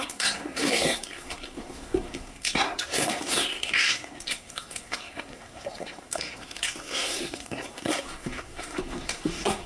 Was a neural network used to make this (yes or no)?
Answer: yes